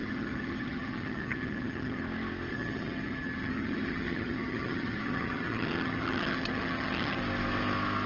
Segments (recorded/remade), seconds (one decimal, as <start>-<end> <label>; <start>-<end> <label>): 0.0-2.0 remade; 2.0-2.5 recorded; 2.5-7.2 remade; 7.2-8.1 recorded